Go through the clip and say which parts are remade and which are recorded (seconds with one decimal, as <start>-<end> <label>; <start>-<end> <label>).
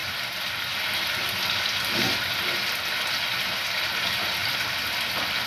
0.0-5.5 recorded